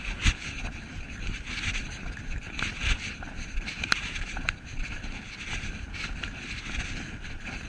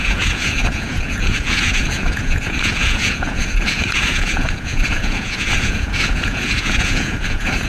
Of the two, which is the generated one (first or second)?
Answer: second